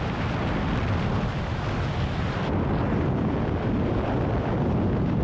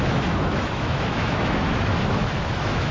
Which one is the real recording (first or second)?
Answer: first